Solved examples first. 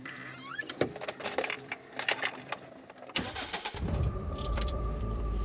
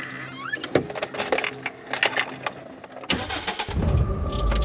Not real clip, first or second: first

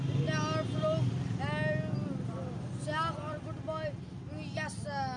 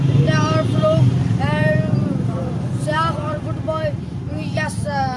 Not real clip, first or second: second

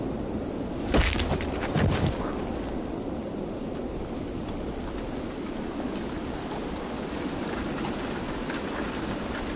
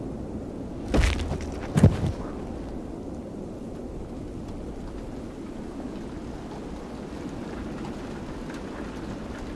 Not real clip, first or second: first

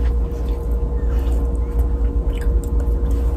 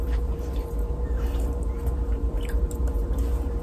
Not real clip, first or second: second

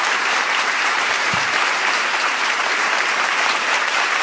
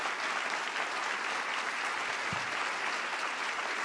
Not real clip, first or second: first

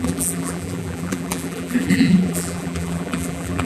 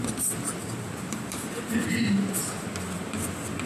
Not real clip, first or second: first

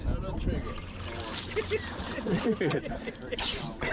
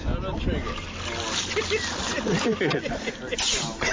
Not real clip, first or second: first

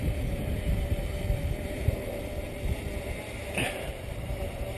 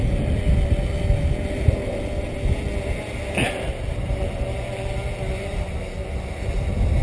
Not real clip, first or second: first